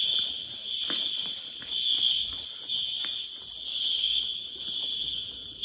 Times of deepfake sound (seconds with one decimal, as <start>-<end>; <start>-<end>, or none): 3.7-4.4